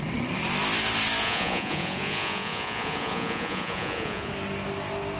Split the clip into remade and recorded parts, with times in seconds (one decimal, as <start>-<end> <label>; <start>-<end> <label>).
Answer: 0.0-1.2 recorded; 1.2-4.3 remade; 4.3-5.2 recorded